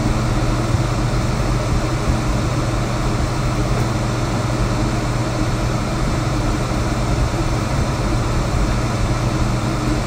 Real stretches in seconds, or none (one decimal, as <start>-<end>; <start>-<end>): 0.0-5.2; 8.5-10.1